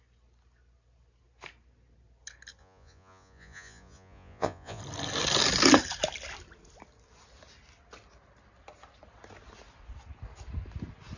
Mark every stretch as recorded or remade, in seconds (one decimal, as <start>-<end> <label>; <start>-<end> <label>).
0.0-2.6 recorded; 2.6-4.8 remade; 4.8-11.2 recorded